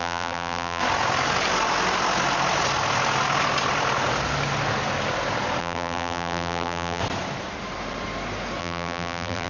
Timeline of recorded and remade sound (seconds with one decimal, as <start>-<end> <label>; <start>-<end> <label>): 0.0-0.8 remade; 0.8-5.6 recorded; 5.6-7.0 remade; 7.0-8.6 recorded; 8.6-9.5 remade